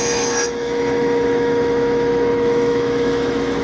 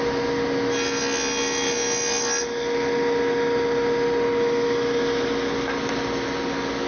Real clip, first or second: second